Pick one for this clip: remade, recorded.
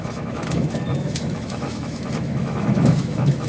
remade